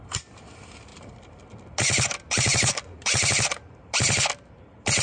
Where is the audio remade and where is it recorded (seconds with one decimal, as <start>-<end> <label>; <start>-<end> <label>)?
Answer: 0.0-5.0 recorded